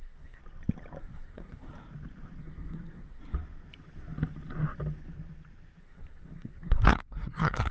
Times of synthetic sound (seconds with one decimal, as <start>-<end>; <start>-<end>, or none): 0.0-0.4; 1.0-1.7; 2.4-3.2; 5.8-7.7